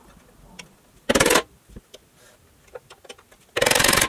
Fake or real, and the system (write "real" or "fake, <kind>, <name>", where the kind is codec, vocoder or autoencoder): real